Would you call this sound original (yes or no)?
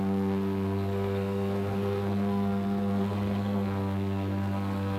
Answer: no